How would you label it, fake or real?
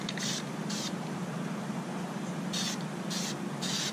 real